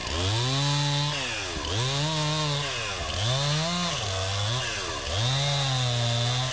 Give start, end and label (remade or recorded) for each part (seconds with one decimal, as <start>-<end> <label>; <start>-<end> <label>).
0.0-6.5 recorded